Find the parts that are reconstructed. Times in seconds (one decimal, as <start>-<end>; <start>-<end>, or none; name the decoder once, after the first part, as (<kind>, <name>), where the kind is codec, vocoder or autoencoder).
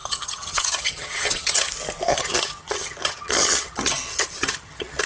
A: 0.0-1.7 (vocoder, HiFi-GAN); 2.1-5.1